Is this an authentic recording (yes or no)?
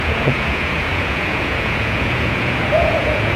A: no